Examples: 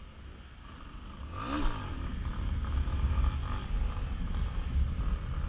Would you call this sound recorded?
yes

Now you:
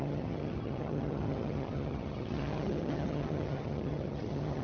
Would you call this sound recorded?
no